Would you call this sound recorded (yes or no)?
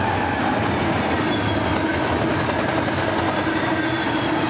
yes